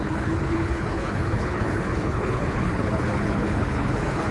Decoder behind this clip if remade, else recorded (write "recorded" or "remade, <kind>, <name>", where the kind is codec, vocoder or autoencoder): remade, codec, HILCodec